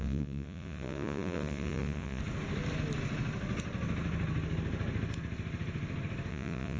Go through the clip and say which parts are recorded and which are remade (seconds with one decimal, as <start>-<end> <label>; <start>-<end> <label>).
0.0-2.2 remade; 2.2-6.3 recorded; 6.3-6.8 remade